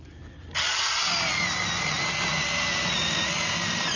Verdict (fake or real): real